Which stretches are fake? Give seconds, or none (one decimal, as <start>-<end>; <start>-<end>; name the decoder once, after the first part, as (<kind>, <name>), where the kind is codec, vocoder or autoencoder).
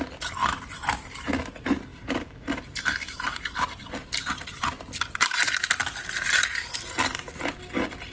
0.4-1.3 (vocoder, BigVGAN v2); 1.9-3.8